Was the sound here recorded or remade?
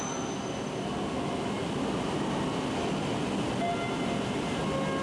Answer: recorded